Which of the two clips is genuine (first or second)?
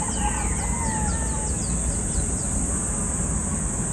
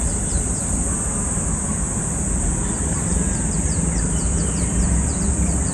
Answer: first